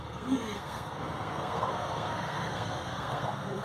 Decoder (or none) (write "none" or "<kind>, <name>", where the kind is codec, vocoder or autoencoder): codec, SNAC